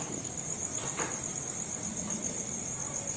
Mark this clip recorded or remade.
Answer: remade